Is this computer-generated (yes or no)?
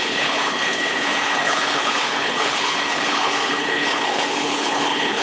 yes